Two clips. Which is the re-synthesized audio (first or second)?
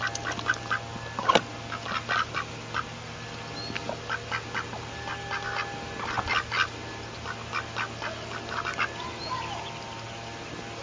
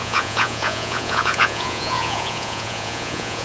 second